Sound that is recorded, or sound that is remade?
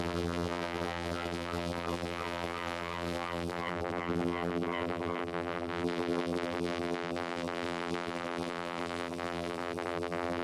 remade